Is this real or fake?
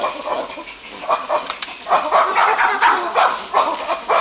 real